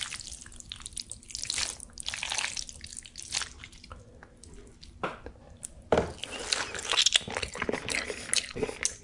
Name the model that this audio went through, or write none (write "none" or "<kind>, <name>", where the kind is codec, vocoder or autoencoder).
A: none